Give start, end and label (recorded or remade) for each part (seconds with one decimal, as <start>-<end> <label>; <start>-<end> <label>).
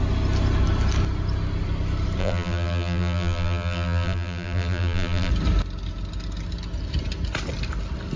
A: 0.0-2.2 recorded; 2.2-5.3 remade; 5.3-8.2 recorded